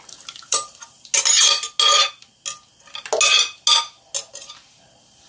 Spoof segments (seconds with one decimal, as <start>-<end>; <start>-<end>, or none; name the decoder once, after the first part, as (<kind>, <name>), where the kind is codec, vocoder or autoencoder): 0.0-1.1 (vocoder, BigVGAN v2); 4.3-5.3